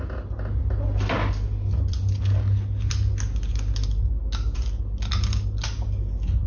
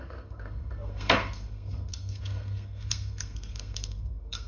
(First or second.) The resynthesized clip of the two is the second